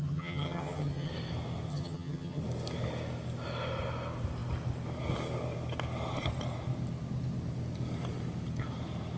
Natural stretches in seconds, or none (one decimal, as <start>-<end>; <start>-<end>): 1.1-1.7; 2.4-9.2